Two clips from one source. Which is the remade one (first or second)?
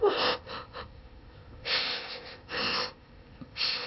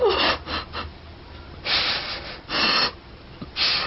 first